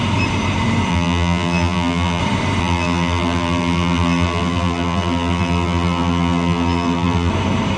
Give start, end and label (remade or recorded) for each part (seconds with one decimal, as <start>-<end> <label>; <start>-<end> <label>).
0.0-0.9 recorded; 0.9-2.2 remade; 2.2-2.6 recorded; 2.6-7.3 remade; 7.3-7.8 recorded